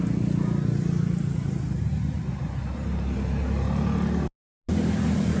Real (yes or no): yes